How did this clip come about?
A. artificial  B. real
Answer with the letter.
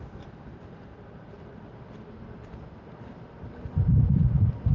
B